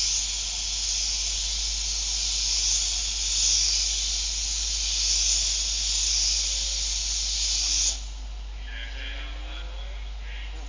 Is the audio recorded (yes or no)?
yes